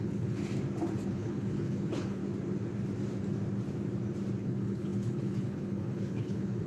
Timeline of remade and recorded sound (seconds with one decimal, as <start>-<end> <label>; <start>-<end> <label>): 0.0-0.4 remade; 0.4-1.1 recorded; 1.1-2.2 remade; 2.2-4.4 recorded; 4.4-6.7 remade